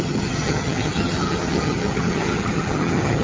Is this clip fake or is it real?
fake